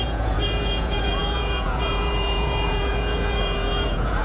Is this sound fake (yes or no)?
yes